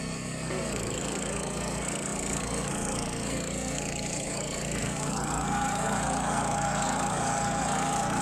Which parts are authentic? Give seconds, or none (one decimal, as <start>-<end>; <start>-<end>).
none